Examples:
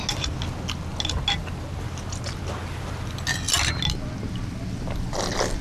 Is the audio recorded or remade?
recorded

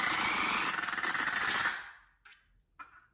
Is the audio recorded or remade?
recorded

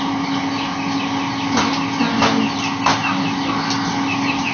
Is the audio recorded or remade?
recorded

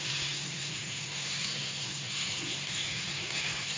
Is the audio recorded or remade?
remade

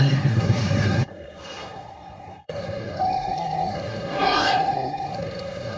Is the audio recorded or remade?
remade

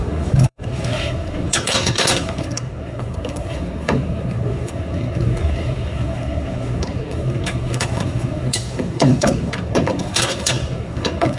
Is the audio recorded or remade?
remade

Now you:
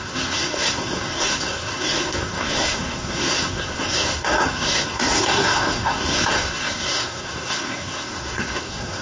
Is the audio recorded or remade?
remade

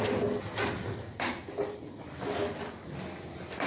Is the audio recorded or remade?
recorded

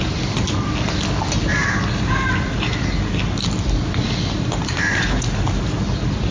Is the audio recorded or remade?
recorded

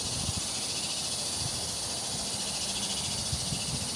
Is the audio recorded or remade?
recorded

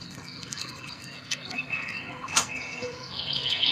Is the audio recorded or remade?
remade